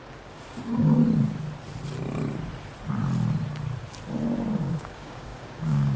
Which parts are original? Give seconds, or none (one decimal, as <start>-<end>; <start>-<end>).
1.0-4.6